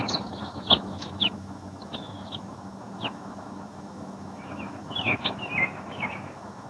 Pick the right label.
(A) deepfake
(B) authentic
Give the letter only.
A